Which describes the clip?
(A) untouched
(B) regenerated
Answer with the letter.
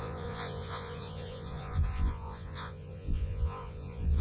B